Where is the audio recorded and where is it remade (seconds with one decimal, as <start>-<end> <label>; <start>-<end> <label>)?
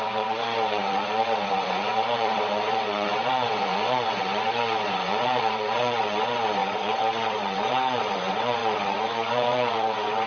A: 0.0-10.3 remade